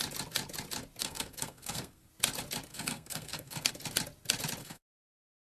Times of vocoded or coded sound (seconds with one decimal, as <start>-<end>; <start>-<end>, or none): 1.0-2.1; 2.7-3.7; 4.6-5.6